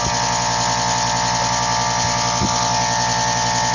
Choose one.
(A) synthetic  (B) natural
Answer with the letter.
B